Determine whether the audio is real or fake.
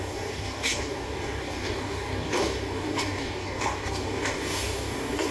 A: fake